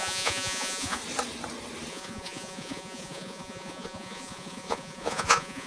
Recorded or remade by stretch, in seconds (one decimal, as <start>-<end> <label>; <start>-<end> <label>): 0.0-1.0 remade; 1.0-1.9 recorded; 1.9-5.7 remade